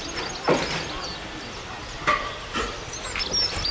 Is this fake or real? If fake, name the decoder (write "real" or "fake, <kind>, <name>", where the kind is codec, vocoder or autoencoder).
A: real